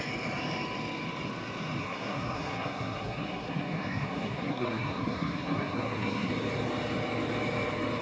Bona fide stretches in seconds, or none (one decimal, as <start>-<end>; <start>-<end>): 0.0-1.8; 6.3-8.0